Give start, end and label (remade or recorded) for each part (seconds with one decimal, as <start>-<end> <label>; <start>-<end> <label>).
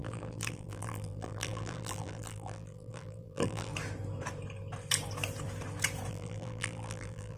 0.0-3.7 remade; 3.7-6.1 recorded; 6.1-7.4 remade